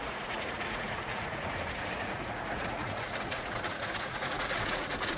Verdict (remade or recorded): remade